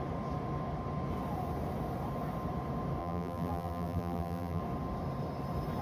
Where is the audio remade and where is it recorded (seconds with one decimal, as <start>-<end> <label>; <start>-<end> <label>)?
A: 0.0-3.0 recorded; 3.0-4.6 remade; 4.6-5.8 recorded